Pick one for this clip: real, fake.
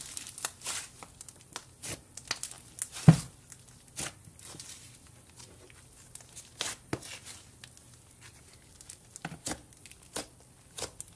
real